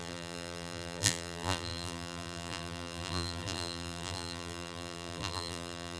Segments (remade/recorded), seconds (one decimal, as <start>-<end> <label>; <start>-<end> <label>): 0.0-6.0 remade